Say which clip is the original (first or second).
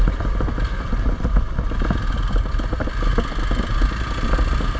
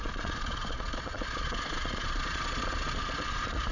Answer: first